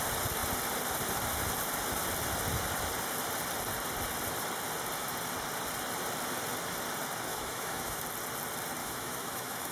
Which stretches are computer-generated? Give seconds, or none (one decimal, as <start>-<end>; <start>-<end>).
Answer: 7.3-8.0; 8.8-9.7

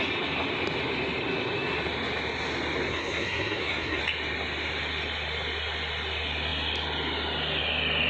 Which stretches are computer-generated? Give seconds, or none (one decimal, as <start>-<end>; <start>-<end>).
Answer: 2.9-4.0

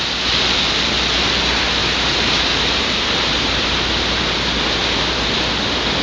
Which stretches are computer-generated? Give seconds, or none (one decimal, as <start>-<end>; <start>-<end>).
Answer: 1.8-4.2

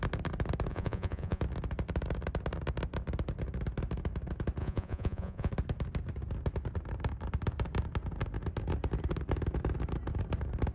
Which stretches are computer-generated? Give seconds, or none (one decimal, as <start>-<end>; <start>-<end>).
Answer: 0.7-1.4; 4.6-5.5

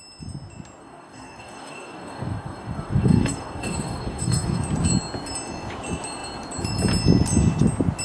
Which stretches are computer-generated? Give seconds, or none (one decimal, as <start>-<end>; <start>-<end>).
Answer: 0.8-4.6

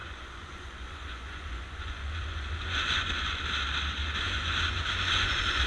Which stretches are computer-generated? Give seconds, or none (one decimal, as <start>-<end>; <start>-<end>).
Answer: 0.0-3.4; 4.0-5.7

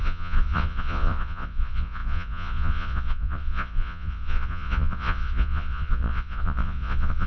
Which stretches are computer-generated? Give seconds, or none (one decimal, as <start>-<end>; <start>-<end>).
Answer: 0.0-7.3